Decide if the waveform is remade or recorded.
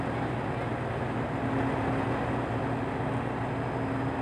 recorded